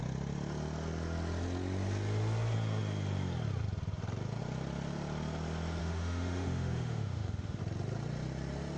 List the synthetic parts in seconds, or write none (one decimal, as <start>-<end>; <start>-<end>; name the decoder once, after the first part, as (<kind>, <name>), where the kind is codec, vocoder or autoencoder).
5.8-7.6 (autoencoder, DAC-VAE)